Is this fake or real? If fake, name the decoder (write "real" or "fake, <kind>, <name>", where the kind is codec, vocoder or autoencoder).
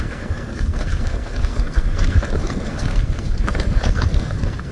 fake, codec, SNAC